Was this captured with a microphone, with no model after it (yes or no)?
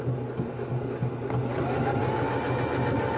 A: yes